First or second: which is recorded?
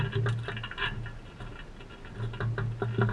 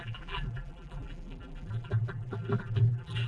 first